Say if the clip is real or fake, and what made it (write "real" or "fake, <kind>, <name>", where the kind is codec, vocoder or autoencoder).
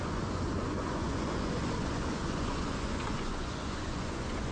fake, vocoder, Vocos